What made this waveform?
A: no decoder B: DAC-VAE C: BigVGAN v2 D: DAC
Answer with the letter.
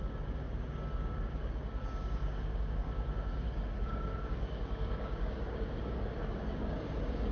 D